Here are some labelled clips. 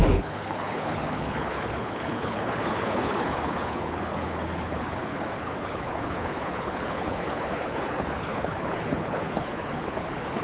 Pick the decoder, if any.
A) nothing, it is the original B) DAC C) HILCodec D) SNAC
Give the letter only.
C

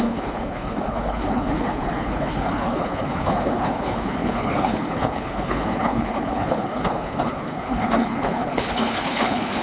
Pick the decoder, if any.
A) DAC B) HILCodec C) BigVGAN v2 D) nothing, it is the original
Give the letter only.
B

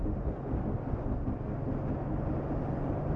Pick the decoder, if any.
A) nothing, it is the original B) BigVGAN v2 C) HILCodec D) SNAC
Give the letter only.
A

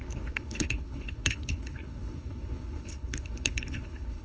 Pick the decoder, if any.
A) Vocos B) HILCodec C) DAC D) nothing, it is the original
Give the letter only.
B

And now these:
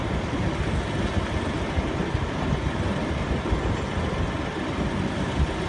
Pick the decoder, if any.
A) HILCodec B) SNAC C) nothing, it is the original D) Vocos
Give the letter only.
C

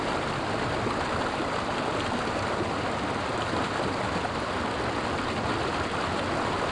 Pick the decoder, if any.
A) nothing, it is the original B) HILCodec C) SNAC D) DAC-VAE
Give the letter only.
A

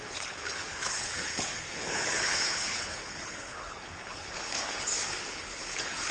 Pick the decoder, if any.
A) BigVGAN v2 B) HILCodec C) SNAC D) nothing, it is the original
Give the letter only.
B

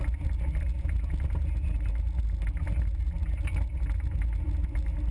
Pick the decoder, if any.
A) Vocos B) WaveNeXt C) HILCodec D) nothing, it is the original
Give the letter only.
D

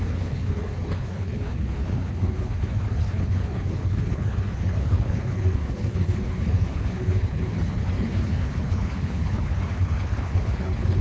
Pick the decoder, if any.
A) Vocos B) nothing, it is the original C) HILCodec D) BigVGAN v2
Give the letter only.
C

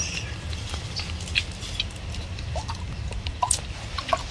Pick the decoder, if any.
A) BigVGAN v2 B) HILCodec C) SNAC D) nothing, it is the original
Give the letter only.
D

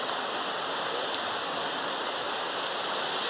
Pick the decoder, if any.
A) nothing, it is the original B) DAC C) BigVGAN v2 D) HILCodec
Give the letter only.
A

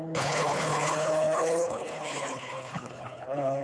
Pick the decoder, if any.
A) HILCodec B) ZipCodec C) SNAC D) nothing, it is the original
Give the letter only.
A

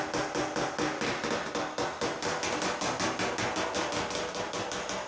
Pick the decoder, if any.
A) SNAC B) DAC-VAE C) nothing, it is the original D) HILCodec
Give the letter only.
C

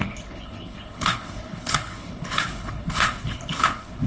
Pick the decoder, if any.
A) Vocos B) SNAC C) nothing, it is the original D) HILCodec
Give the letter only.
D